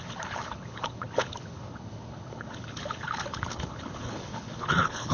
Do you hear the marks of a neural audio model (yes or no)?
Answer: yes